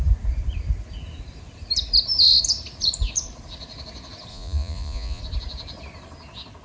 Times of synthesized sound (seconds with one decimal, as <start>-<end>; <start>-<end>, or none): 4.3-5.2

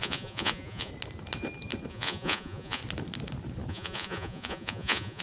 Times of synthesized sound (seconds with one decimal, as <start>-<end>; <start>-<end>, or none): 0.0-0.9; 1.9-2.8; 3.7-5.2

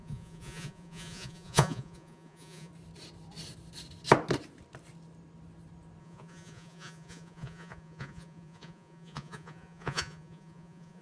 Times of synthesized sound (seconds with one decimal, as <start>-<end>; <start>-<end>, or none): 0.0-2.7; 6.0-11.0

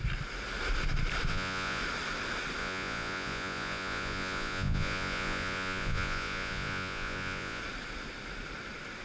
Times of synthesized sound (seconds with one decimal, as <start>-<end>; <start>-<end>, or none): 1.3-1.8; 2.6-7.6

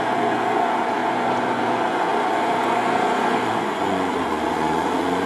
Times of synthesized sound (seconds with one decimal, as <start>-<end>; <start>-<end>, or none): 0.0-5.3

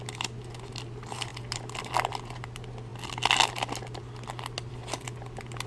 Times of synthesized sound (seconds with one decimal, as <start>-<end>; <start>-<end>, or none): none